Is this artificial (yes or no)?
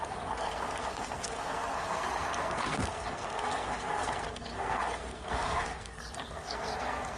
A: yes